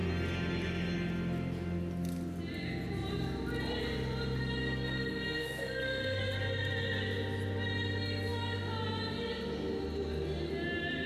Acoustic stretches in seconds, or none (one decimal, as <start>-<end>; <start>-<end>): 0.0-4.6; 6.2-11.1